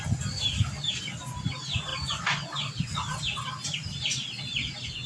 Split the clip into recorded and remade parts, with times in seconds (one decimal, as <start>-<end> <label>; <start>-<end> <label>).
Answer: 0.0-5.1 recorded